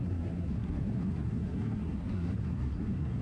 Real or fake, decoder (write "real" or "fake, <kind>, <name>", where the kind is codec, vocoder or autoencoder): fake, codec, SNAC